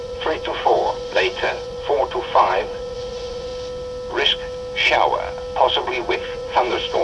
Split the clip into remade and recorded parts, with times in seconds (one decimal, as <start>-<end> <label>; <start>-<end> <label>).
0.0-3.5 remade; 3.5-6.1 recorded; 6.1-7.0 remade